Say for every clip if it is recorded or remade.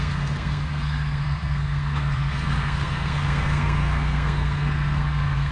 remade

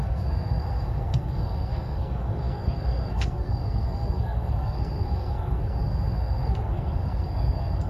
remade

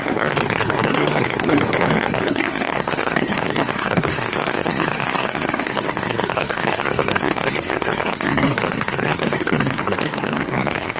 remade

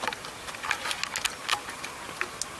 recorded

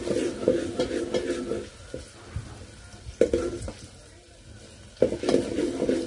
recorded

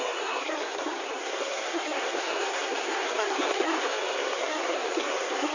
remade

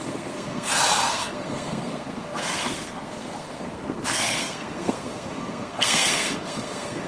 remade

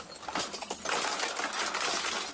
recorded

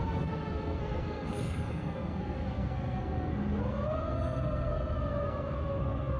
remade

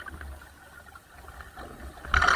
recorded